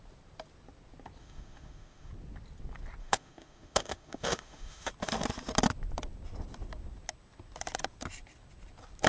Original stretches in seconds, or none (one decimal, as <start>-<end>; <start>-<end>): 0.0-1.2; 2.1-3.0; 4.9-9.1